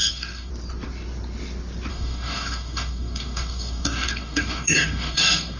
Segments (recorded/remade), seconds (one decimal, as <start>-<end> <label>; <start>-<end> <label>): 0.0-0.5 remade; 0.5-1.9 recorded; 1.9-5.6 remade